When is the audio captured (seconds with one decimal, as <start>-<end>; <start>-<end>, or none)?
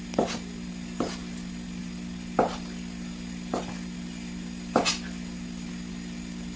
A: 0.0-6.6